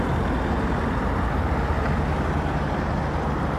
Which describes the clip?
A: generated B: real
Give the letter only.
B